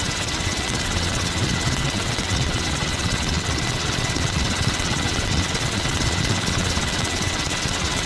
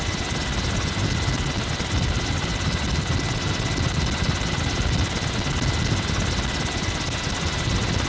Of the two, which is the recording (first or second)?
second